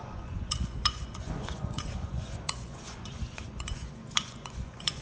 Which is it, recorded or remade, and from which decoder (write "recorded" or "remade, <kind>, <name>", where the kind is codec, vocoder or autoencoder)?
remade, vocoder, Vocos